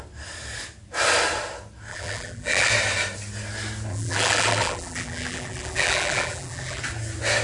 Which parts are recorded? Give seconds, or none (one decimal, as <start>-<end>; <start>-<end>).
0.0-1.9; 2.7-3.9; 6.8-7.4